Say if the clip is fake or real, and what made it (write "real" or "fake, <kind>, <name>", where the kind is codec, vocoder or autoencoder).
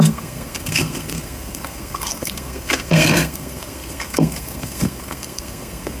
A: fake, codec, SNAC